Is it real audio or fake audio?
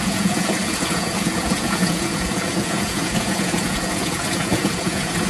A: fake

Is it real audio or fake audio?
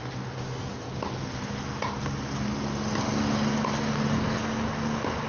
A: real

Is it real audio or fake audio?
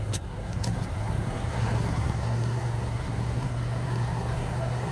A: fake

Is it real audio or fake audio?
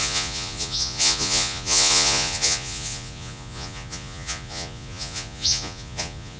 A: fake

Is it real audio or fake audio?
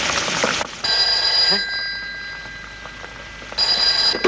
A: real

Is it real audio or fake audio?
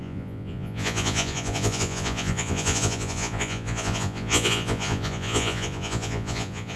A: fake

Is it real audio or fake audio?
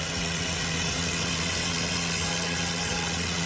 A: fake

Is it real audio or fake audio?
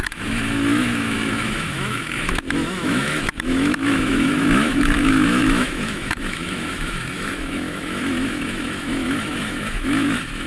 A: fake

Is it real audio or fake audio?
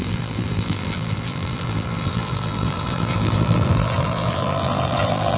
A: fake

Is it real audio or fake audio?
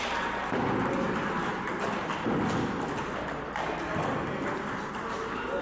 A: real